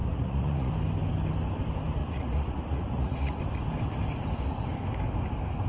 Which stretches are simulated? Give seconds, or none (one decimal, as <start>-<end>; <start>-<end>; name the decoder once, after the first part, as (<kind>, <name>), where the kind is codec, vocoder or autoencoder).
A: 0.0-0.7 (vocoder, Vocos); 2.0-3.4